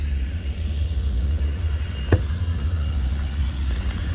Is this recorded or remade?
remade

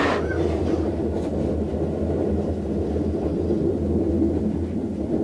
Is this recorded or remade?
recorded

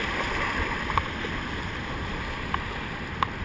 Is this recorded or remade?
recorded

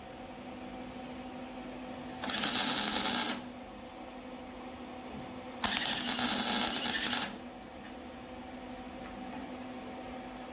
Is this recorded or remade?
recorded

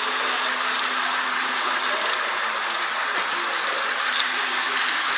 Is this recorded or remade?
recorded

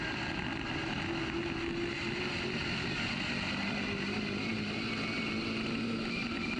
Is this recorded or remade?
recorded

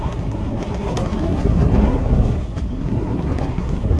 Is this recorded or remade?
remade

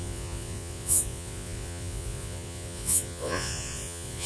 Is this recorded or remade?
remade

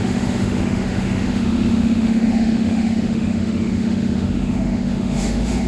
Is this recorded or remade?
remade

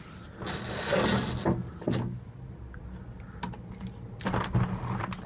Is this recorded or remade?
recorded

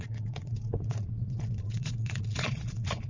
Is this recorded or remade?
remade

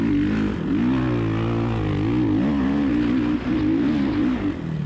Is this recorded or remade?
recorded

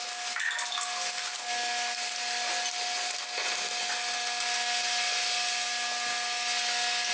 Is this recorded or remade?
recorded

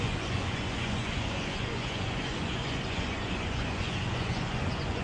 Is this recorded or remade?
remade